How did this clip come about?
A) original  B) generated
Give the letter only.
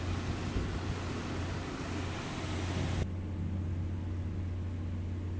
A